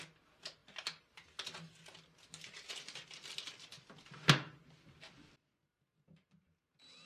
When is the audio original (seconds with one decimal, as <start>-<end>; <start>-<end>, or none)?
0.0-7.1